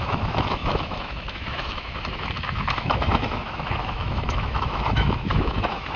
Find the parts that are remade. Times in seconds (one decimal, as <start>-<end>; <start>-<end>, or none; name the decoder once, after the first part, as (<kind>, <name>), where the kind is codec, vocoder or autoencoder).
0.0-6.0 (autoencoder, DAC-VAE)